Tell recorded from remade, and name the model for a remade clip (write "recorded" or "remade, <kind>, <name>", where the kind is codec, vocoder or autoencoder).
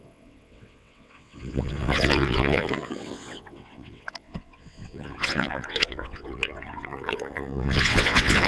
remade, vocoder, WaveNeXt